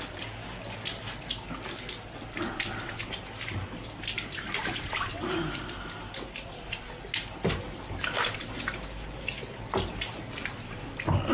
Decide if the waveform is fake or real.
real